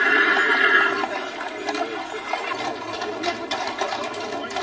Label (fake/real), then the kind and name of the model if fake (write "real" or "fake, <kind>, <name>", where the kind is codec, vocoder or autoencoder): real